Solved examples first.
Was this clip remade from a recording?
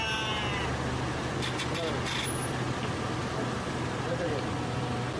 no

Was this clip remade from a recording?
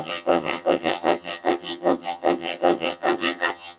yes